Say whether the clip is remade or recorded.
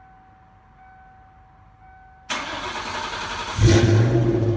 recorded